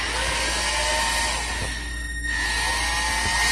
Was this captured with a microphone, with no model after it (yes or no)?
yes